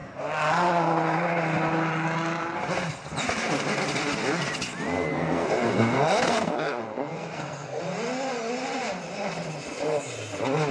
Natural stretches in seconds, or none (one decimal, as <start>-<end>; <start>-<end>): 0.0-5.1; 7.8-10.7